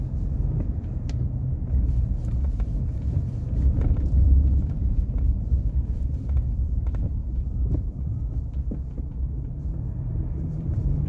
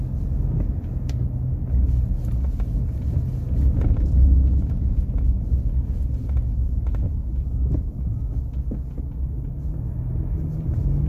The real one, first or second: second